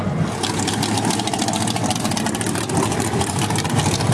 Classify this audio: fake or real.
real